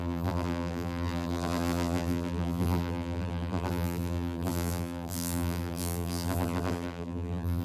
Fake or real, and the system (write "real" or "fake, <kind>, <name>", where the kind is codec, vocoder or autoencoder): fake, vocoder, BigVGAN v2